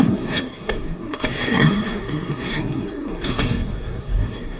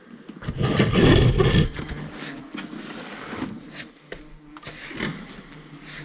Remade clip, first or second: first